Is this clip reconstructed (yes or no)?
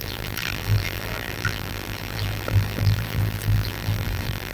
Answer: yes